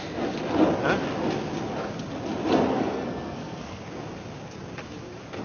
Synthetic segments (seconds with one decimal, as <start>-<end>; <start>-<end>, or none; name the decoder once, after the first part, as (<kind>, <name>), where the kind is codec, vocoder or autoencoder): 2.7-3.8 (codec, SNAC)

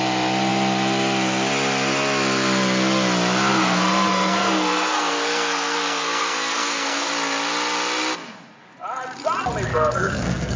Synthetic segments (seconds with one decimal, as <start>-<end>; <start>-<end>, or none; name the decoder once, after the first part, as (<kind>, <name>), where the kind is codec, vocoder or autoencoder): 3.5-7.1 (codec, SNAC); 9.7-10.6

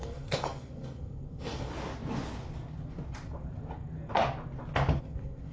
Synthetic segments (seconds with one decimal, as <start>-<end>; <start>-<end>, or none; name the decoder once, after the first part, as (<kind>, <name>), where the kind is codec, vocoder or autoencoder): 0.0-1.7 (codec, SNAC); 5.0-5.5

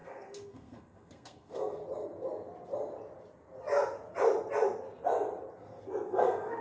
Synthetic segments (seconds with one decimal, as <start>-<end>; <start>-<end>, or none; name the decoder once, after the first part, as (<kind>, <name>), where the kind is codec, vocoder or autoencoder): 0.0-1.8 (codec, SNAC); 5.8-6.6